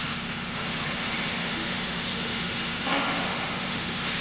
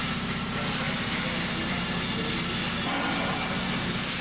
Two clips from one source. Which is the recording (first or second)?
second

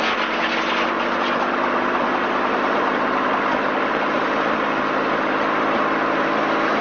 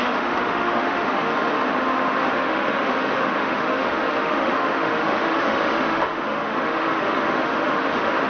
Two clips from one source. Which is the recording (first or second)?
first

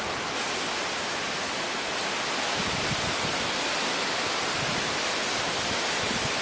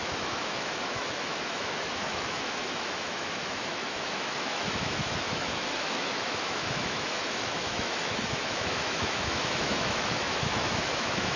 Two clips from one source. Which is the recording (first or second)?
first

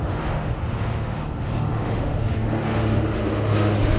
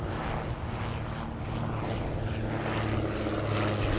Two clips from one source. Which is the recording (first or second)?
second